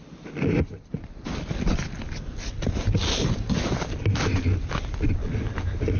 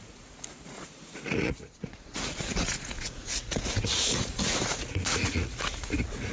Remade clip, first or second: second